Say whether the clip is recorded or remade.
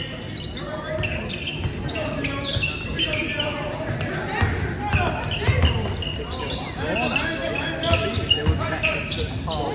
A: recorded